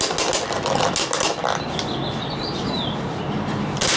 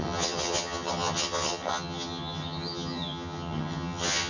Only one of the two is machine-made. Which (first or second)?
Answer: second